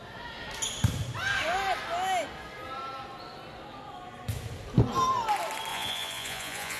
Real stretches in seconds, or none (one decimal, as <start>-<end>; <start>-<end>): 0.0-5.7